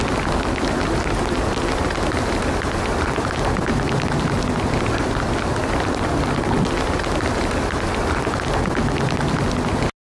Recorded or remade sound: recorded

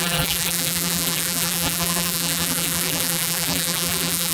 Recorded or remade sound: remade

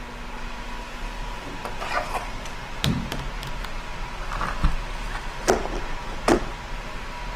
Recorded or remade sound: recorded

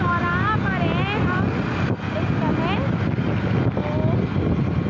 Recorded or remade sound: recorded